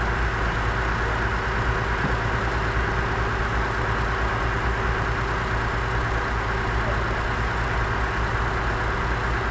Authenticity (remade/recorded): recorded